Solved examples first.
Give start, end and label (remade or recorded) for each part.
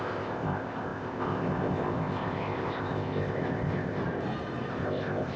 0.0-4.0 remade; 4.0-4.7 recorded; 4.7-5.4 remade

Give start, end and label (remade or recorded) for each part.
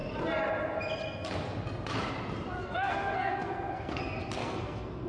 0.0-2.6 recorded; 2.6-4.0 remade; 4.0-4.4 recorded; 4.4-5.1 remade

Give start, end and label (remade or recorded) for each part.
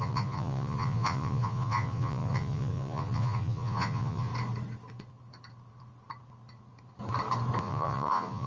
0.0-4.3 remade; 4.3-7.6 recorded; 7.6-8.5 remade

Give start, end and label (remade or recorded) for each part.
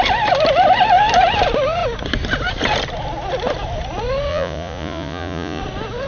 0.0-4.3 recorded; 4.3-5.6 remade; 5.6-6.1 recorded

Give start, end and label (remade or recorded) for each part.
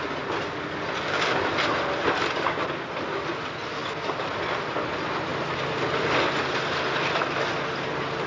0.0-8.3 recorded